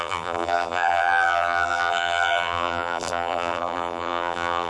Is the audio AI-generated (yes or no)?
yes